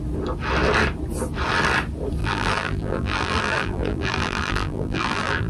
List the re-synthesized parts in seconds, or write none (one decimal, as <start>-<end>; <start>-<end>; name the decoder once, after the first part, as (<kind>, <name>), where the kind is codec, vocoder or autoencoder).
2.2-5.5 (vocoder, BigVGAN v2)